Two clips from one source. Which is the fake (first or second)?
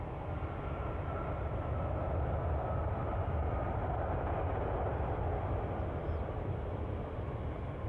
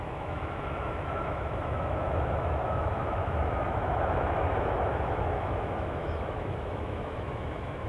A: second